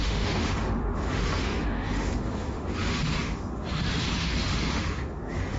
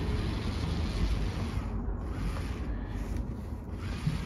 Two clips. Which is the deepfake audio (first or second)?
first